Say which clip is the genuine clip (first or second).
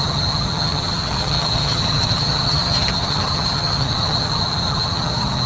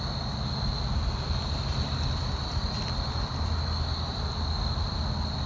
second